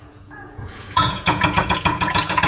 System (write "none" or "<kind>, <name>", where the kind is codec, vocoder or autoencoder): vocoder, Vocos